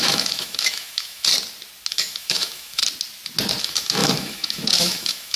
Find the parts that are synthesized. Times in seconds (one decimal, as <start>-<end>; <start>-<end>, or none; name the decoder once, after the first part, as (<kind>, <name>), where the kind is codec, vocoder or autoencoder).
0.0-1.3 (autoencoder, DAC-VAE); 1.9-2.8; 3.6-5.4